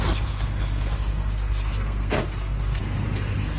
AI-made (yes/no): yes